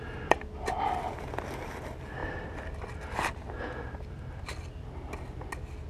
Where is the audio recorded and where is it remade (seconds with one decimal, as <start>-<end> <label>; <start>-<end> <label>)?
0.0-2.2 recorded; 2.2-4.4 remade; 4.4-5.9 recorded